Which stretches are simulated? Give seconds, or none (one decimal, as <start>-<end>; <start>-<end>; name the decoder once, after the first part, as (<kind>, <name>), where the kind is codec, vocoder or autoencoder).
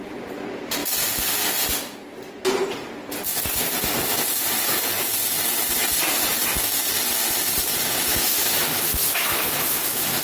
8.1-10.2 (autoencoder, DAC-VAE)